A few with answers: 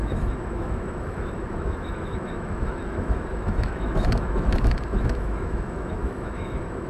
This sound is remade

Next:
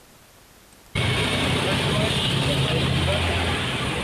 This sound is recorded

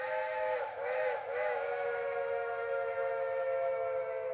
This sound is remade